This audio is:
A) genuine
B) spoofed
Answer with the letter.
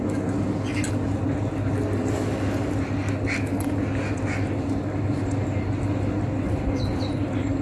A